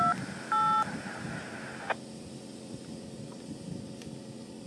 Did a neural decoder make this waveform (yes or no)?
no